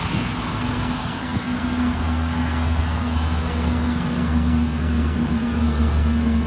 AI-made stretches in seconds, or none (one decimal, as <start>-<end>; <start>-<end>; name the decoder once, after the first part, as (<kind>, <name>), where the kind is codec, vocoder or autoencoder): 0.0-6.5 (codec, SNAC)